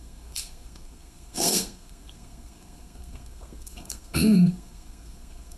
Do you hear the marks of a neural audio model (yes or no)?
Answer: yes